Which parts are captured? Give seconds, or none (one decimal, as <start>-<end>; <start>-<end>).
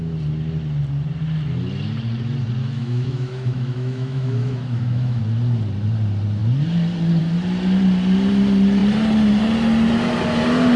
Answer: 0.0-2.6; 5.2-10.8